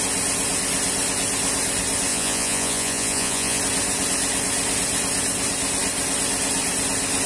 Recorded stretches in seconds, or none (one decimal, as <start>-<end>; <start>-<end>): 0.0-2.1; 3.6-7.3